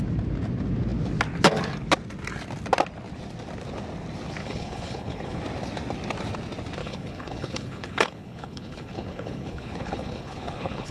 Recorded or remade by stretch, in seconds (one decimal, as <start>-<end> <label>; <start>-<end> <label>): 0.0-4.4 recorded; 4.4-5.4 remade; 5.4-6.8 recorded; 6.8-10.9 remade